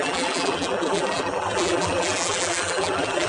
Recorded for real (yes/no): no